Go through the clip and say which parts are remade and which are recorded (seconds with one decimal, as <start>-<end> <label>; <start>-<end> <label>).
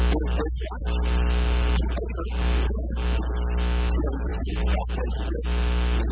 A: 0.0-4.3 recorded; 4.3-4.8 remade; 4.8-6.1 recorded